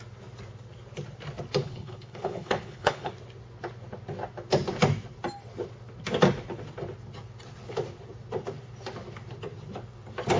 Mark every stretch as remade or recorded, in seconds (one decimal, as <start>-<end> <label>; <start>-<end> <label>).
0.0-1.6 recorded; 1.6-3.1 remade; 3.1-10.4 recorded